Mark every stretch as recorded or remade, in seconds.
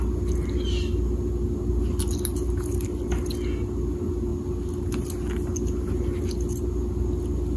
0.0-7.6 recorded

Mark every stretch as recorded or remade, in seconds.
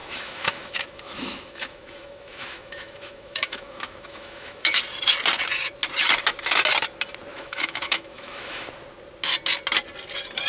0.0-4.8 remade; 4.8-7.3 recorded; 7.3-8.7 remade; 8.7-10.5 recorded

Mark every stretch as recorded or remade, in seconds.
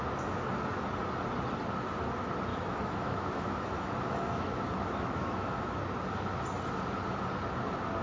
0.0-2.5 recorded; 2.5-5.8 remade; 5.8-8.0 recorded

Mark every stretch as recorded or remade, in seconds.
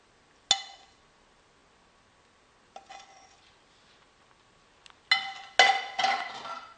0.0-6.8 recorded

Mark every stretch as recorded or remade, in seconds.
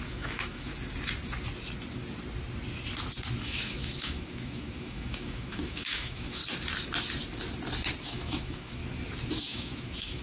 0.0-0.7 remade; 0.7-3.4 recorded; 3.4-6.4 remade; 6.4-8.0 recorded; 8.0-8.8 remade; 8.8-9.4 recorded; 9.4-10.2 remade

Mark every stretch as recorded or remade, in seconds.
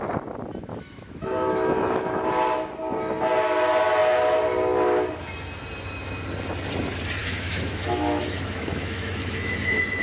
0.0-0.7 recorded; 0.7-2.3 remade; 2.3-7.2 recorded; 7.2-10.0 remade